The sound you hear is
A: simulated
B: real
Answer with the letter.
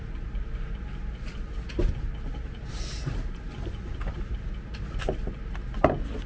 B